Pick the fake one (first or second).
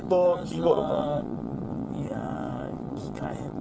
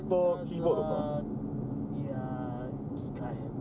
first